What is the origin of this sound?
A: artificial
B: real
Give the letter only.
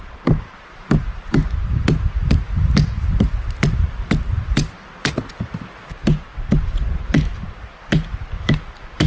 A